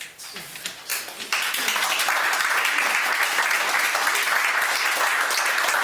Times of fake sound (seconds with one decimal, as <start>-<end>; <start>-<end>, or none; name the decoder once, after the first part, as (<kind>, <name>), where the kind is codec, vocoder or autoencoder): none

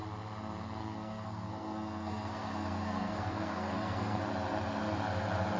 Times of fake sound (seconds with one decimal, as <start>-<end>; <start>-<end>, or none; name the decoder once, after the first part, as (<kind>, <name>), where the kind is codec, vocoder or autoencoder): 0.8-4.2 (codec, SNAC)

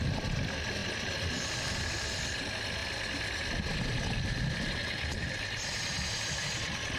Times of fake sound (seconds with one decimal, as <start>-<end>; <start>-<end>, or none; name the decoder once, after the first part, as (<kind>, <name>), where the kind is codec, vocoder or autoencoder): 0.8-1.7 (vocoder, BigVGAN v2)

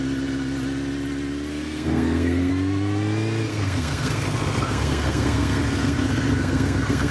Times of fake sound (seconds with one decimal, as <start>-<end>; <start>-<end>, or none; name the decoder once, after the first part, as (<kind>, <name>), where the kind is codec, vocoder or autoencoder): 1.5-2.5 (codec, SNAC); 3.5-7.1

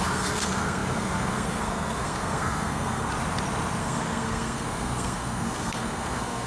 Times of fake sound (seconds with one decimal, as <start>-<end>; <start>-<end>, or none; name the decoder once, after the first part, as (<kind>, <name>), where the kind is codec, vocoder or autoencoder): 0.0-3.1 (codec, SNAC); 3.8-6.5

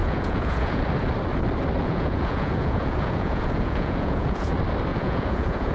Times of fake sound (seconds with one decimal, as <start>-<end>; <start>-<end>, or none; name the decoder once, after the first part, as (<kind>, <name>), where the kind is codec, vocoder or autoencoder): 0.0-0.8 (vocoder, Vocos); 1.8-4.5; 4.9-5.7